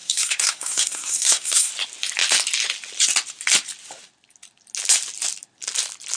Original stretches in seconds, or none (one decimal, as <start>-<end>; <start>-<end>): 1.7-6.2